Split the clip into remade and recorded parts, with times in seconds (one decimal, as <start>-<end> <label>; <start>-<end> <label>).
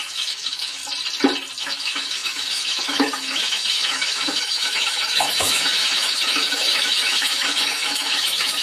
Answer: 0.0-0.8 remade; 0.8-1.6 recorded; 1.6-8.6 remade